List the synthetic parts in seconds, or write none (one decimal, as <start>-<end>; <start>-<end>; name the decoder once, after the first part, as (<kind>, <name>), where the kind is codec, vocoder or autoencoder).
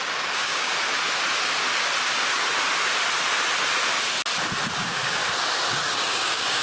0.0-0.7 (codec, DAC); 4.7-5.2; 5.7-6.6